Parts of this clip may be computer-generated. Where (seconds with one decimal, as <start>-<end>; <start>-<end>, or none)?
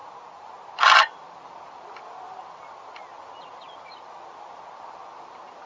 none